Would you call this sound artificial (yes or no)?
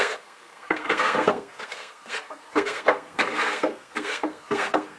yes